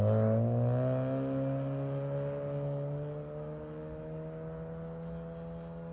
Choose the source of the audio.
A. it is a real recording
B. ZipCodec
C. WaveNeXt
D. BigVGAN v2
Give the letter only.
A